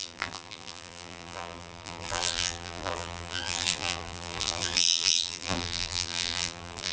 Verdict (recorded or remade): remade